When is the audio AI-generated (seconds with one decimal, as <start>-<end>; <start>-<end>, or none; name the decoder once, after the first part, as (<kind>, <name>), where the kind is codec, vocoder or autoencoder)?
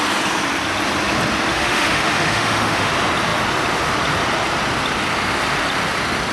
1.5-2.9 (autoencoder, DAC-VAE)